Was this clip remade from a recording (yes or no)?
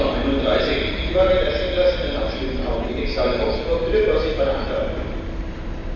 no